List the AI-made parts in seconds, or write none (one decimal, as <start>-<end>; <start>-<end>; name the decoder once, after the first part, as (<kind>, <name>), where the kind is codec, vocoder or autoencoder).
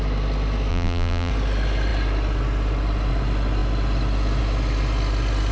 0.7-1.3 (vocoder, BigVGAN v2)